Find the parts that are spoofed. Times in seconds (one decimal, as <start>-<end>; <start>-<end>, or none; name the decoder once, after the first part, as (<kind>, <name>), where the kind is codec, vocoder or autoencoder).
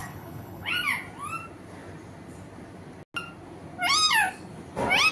0.0-0.7 (codec, HILCodec)